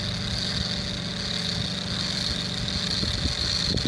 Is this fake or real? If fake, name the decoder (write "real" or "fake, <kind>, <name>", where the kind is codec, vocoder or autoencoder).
real